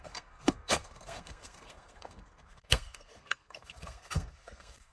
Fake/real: fake